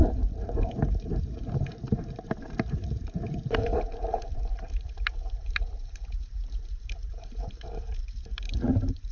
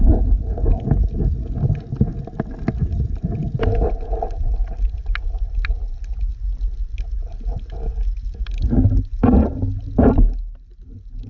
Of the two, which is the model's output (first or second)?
first